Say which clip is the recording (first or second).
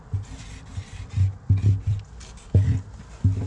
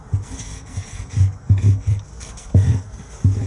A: first